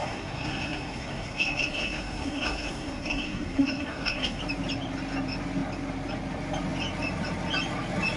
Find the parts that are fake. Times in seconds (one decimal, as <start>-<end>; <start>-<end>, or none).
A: 0.0-4.4